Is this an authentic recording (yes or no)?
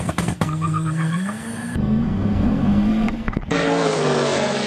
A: no